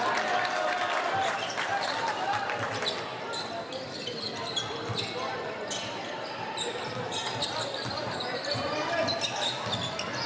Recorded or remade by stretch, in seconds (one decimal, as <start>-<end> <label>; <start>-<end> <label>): 0.0-10.3 recorded